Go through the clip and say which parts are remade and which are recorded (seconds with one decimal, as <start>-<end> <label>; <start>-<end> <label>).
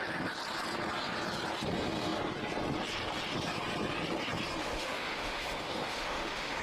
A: 0.0-4.6 recorded; 4.6-6.6 remade